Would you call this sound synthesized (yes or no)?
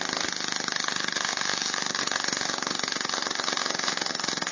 no